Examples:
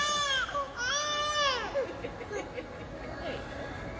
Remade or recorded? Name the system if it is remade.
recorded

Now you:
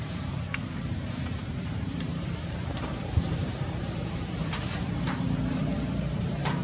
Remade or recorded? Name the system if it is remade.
remade, vocoder, BigVGAN v2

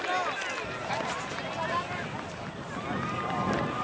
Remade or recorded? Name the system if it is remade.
recorded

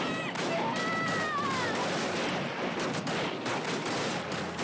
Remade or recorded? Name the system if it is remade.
recorded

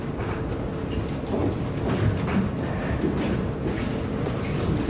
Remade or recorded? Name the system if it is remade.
recorded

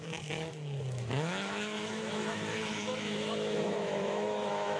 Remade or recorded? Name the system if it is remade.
remade, autoencoder, DAC-VAE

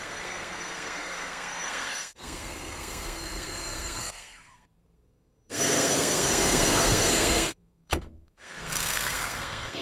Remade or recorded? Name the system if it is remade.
remade, codec, SNAC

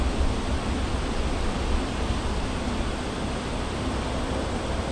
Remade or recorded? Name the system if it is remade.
recorded